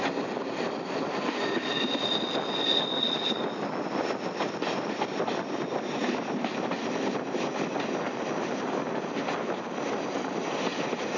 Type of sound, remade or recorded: recorded